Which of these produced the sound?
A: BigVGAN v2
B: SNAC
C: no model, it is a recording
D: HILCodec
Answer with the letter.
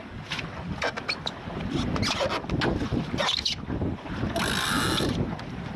C